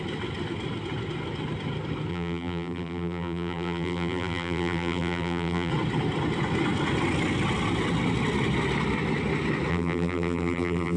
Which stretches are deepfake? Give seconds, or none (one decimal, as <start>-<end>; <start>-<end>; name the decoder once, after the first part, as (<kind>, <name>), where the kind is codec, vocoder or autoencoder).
2.1-5.7 (vocoder, BigVGAN v2); 9.7-11.0